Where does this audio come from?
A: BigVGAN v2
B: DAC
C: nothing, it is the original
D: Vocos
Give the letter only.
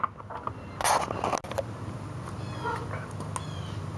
C